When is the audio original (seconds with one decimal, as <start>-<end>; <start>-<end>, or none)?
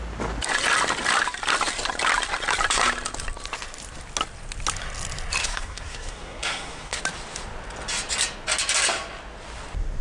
0.0-5.4; 7.0-10.0